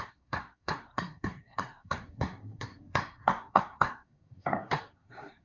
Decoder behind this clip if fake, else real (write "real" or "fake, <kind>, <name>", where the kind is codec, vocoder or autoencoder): fake, codec, SNAC